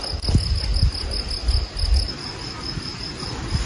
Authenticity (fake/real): real